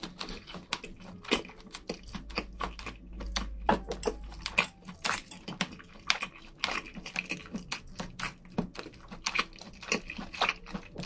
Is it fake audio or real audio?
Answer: real